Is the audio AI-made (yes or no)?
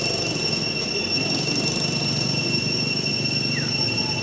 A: no